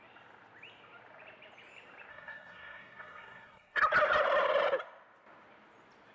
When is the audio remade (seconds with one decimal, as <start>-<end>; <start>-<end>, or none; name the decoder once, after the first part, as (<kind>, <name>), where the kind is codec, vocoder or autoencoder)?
2.1-3.8 (codec, SNAC)